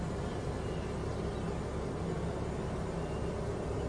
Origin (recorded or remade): recorded